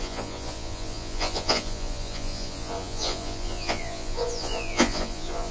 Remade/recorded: remade